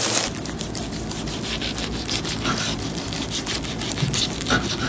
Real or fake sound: real